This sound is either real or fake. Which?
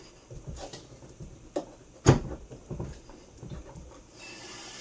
fake